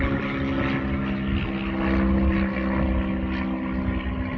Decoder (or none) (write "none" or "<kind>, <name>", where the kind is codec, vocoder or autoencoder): none